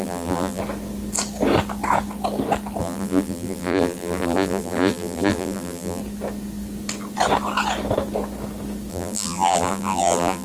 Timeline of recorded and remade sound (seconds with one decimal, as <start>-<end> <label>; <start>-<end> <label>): 0.0-0.6 remade; 0.6-2.8 recorded; 2.8-6.0 remade; 6.0-8.9 recorded; 8.9-10.4 remade